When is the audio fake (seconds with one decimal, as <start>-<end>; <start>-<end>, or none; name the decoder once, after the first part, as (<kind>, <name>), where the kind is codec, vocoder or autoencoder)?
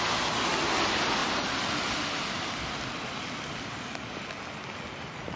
none